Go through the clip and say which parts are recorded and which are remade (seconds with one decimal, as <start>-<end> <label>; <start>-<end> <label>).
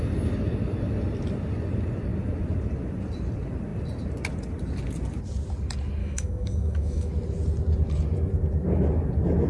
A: 0.0-6.0 recorded; 6.0-7.1 remade; 7.1-9.5 recorded